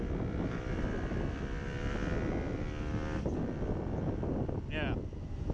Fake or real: real